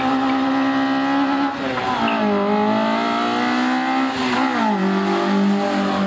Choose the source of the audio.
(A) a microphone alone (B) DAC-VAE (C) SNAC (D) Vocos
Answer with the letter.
A